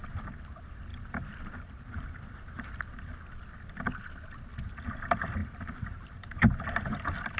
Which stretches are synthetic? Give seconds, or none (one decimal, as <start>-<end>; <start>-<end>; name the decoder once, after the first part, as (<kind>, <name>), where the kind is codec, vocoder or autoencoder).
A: 0.9-2.8 (vocoder, BigVGAN v2); 5.4-6.6